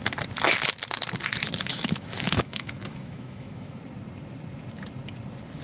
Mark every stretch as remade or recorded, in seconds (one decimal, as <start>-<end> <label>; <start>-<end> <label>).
0.0-1.7 recorded; 1.7-3.8 remade; 3.8-5.6 recorded

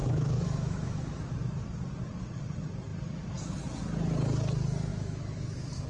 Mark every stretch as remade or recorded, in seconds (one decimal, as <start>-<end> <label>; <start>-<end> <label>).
0.0-1.3 remade; 1.3-4.9 recorded; 4.9-5.9 remade

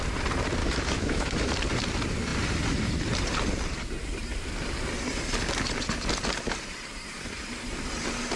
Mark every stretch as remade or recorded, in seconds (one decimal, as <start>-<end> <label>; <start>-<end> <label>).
0.0-0.6 recorded; 0.6-1.5 remade; 1.5-8.4 recorded